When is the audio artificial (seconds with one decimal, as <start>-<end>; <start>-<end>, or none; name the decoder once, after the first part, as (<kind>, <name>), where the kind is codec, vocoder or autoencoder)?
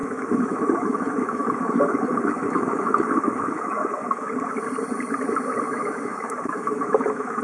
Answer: 0.0-4.3 (autoencoder, DAC-VAE); 5.7-7.4